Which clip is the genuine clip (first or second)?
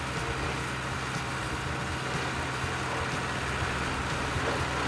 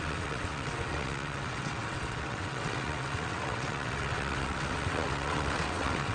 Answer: first